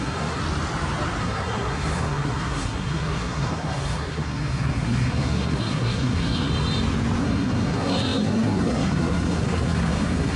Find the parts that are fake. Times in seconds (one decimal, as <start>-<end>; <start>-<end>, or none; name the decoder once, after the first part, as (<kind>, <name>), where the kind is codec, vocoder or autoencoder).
0.0-0.4 (codec, SNAC); 1.2-6.5; 7.2-10.4